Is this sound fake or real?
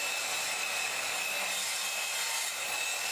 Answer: real